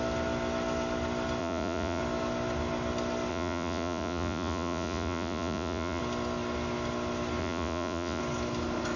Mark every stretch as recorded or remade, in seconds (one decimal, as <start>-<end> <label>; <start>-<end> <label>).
0.0-1.4 recorded; 1.4-2.0 remade; 2.0-3.3 recorded; 3.3-6.0 remade; 6.0-7.4 recorded; 7.4-8.2 remade; 8.2-9.0 recorded